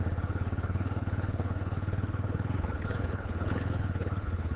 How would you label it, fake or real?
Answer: fake